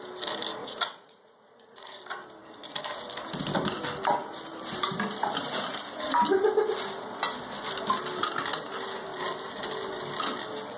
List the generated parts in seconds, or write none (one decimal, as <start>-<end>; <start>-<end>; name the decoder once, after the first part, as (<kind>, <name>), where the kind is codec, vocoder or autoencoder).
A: 0.6-2.0 (vocoder, Vocos)